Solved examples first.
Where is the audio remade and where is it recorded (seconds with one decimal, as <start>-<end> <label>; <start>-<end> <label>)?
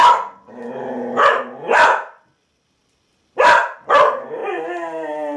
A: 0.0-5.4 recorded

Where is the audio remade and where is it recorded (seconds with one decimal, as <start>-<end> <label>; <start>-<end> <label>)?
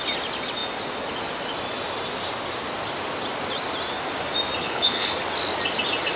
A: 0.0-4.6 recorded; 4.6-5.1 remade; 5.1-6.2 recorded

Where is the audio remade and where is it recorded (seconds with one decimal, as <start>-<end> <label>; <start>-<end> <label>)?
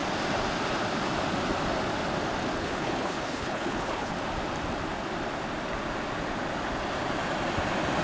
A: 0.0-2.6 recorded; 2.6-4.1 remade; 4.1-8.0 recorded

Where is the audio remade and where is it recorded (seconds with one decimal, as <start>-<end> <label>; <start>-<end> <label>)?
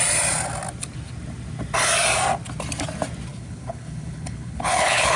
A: 0.0-3.3 recorded; 3.3-5.2 remade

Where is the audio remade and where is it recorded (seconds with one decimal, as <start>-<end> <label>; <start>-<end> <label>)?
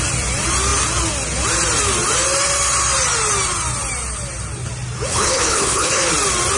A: 0.0-5.1 recorded; 5.1-6.1 remade; 6.1-6.6 recorded